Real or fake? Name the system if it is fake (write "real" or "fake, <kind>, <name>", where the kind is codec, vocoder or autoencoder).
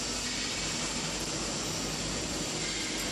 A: real